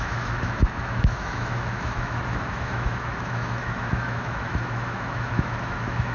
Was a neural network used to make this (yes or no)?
yes